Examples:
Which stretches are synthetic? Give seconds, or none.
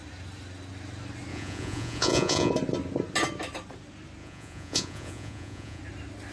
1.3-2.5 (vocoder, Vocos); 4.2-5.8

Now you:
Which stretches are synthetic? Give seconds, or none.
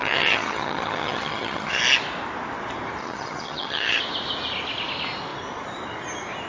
0.0-1.8 (vocoder, HiFi-GAN); 3.0-4.0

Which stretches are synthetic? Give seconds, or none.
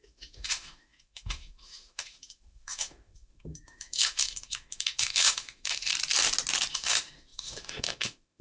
0.0-5.9 (autoencoder, DAC-VAE); 6.7-8.4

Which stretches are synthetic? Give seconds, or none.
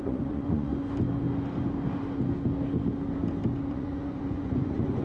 0.0-0.7 (vocoder, Vocos); 3.7-5.0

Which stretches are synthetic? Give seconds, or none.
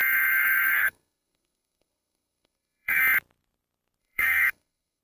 0.0-3.0 (codec, SNAC); 4.0-5.0